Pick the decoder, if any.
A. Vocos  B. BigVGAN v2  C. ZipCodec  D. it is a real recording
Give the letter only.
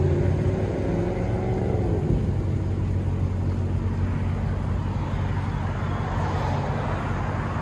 D